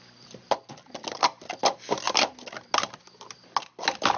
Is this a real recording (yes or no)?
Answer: yes